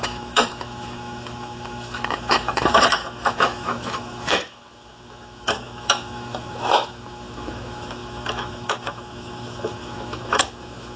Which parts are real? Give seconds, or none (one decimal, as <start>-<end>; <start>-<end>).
none